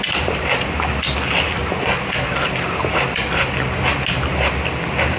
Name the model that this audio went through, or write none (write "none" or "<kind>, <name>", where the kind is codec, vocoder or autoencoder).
none